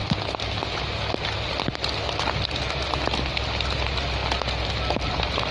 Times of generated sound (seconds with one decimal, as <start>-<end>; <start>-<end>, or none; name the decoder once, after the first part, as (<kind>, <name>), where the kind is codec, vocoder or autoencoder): none